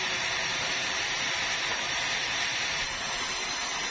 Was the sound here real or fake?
real